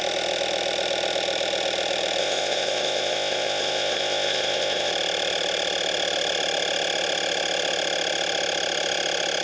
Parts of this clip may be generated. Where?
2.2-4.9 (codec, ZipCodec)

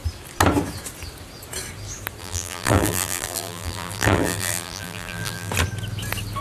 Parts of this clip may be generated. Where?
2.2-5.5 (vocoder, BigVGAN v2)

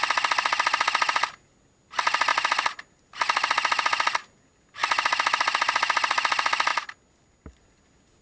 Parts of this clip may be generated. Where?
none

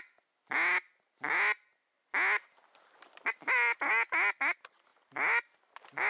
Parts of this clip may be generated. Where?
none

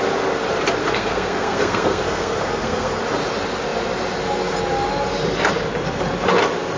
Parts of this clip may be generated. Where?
0.8-3.0 (codec, SNAC)

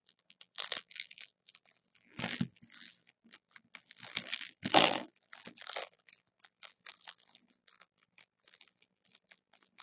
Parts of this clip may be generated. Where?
0.0-9.8 (vocoder, BigVGAN v2)

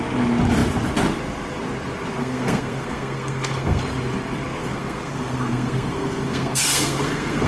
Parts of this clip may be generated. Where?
2.2-3.8 (codec, SNAC); 4.6-7.5